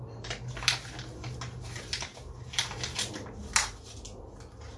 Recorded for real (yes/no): yes